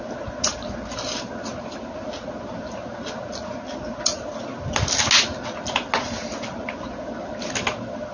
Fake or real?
real